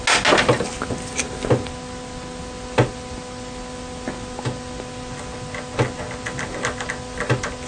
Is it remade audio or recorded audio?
recorded